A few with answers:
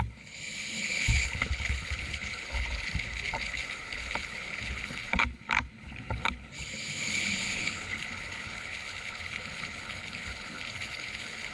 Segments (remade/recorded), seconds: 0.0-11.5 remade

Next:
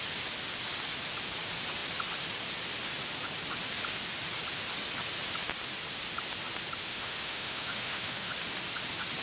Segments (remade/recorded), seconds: 0.0-6.9 recorded; 6.9-8.3 remade; 8.3-9.2 recorded

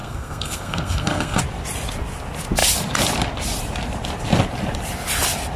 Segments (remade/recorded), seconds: 0.0-1.4 remade; 1.4-5.6 recorded

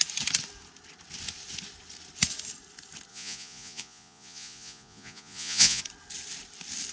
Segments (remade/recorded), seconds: 0.0-3.1 recorded; 3.1-5.8 remade; 5.8-6.9 recorded

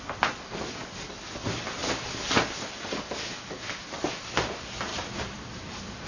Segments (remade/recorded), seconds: 0.0-4.9 recorded; 4.9-5.4 remade; 5.4-6.1 recorded

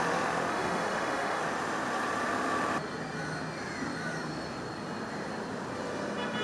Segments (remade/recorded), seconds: 0.0-0.5 recorded; 0.5-1.4 remade; 1.4-6.4 recorded

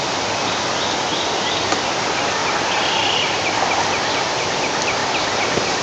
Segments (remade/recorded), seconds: 0.0-5.8 recorded

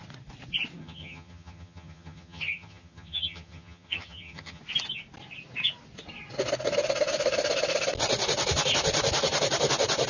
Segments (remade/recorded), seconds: 0.0-0.8 recorded; 0.8-4.6 remade; 4.6-10.1 recorded